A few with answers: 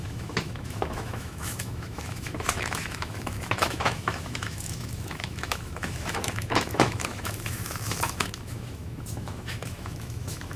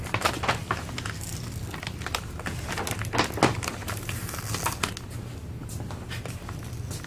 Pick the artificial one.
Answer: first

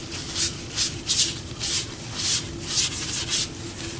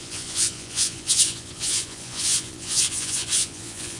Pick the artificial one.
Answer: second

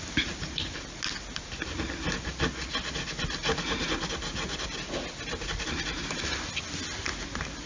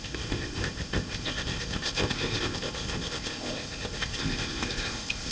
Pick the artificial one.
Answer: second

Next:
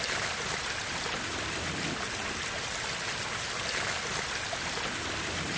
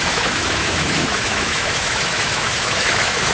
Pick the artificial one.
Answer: second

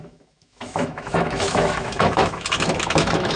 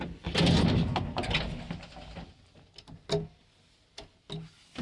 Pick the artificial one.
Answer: first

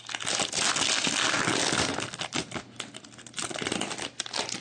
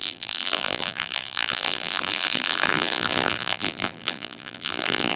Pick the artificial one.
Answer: second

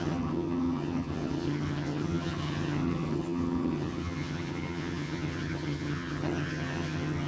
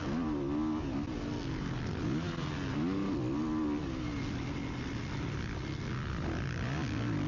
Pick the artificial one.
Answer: first